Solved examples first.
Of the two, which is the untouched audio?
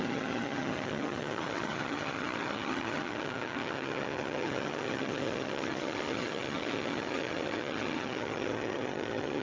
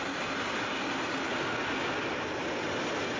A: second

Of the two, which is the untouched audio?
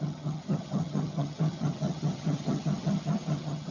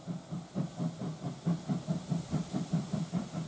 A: second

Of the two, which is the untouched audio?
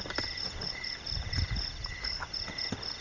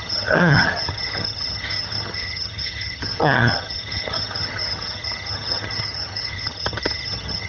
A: first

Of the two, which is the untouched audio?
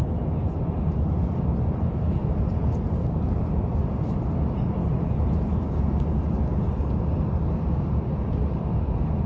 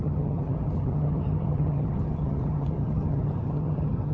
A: first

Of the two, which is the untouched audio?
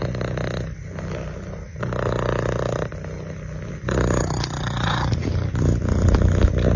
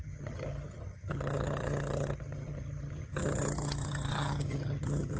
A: first